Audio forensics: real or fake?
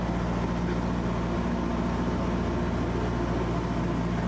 real